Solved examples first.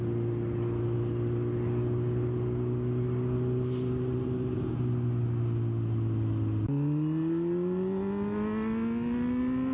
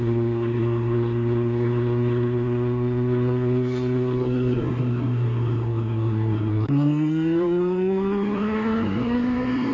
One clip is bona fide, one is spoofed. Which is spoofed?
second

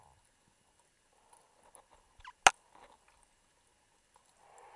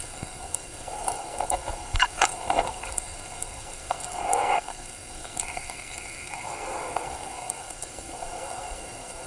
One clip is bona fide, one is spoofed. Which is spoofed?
second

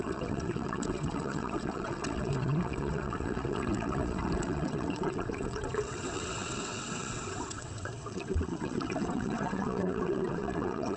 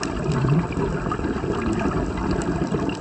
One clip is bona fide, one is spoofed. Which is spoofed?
first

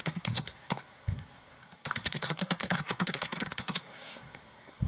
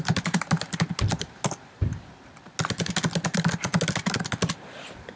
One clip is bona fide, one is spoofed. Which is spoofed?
first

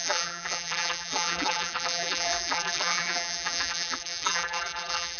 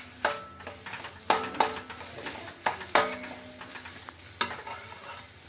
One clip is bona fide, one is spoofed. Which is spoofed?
first